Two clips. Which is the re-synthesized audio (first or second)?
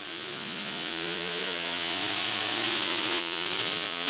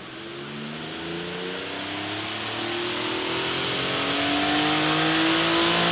first